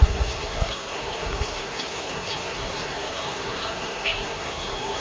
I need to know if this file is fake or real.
fake